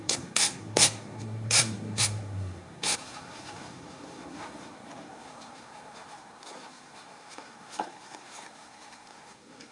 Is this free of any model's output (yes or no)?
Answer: no